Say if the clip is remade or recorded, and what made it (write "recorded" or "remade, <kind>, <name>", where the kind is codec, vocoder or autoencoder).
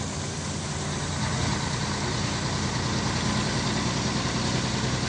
recorded